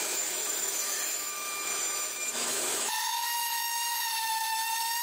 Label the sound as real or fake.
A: fake